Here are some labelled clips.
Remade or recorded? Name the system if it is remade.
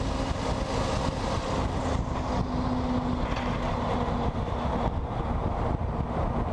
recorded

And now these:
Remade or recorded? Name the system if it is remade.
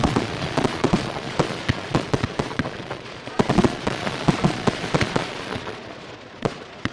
remade, vocoder, Vocos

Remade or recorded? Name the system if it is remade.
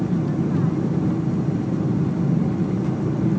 recorded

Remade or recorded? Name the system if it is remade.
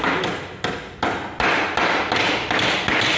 recorded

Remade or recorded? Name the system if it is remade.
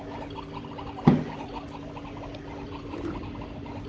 recorded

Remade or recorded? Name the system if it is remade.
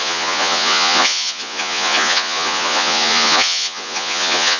remade, vocoder, Vocos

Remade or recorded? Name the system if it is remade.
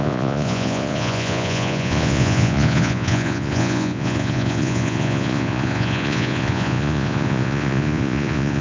remade, vocoder, Vocos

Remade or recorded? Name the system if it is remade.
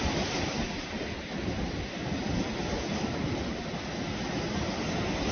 recorded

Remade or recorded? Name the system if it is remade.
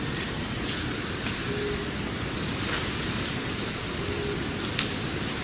recorded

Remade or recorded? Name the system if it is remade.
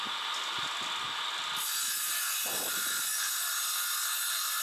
recorded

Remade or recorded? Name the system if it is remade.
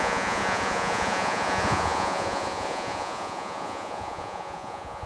remade, vocoder, Vocos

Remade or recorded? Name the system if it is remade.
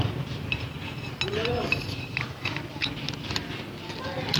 recorded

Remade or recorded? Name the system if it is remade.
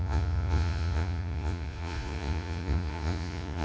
remade, vocoder, Vocos